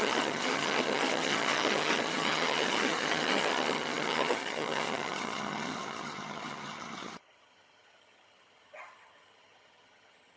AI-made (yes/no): yes